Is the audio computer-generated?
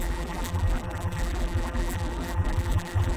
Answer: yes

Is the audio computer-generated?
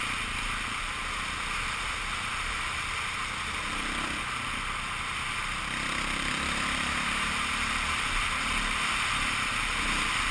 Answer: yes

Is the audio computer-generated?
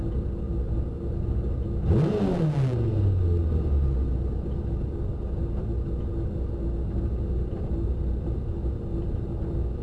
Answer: no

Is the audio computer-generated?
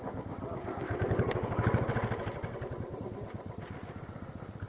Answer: no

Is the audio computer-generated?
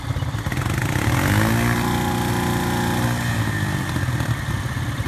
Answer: no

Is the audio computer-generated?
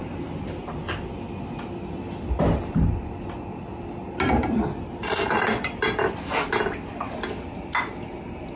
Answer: no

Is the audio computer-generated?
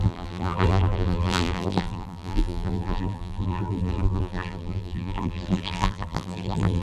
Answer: yes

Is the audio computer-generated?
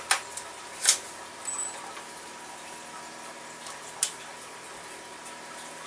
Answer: no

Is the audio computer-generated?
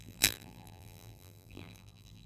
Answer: yes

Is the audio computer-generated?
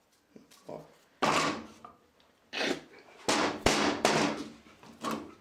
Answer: no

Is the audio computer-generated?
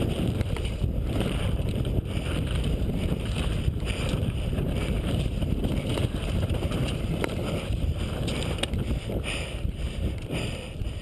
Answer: yes